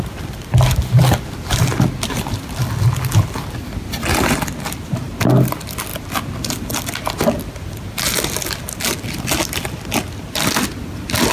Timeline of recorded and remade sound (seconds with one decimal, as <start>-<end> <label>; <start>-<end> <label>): 0.0-11.3 recorded